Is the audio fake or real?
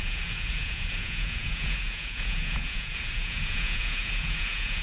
fake